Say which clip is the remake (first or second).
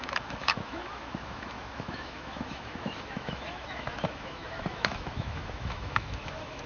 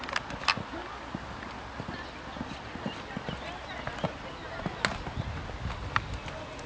first